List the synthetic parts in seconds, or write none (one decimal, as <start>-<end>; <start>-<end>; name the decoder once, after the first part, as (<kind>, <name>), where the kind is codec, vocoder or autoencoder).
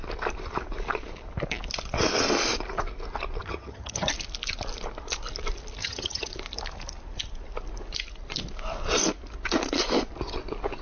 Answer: 3.4-4.1 (vocoder, HiFi-GAN); 5.8-6.3